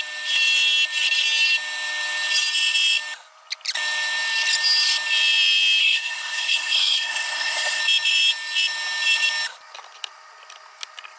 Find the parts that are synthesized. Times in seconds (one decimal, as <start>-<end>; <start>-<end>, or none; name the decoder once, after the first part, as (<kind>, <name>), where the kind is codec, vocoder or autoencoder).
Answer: 5.8-7.8 (codec, SNAC)